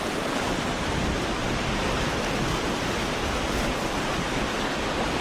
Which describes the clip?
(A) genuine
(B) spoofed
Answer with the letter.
A